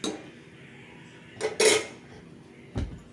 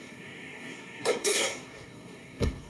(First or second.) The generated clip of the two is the second